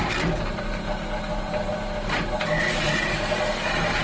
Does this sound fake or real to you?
real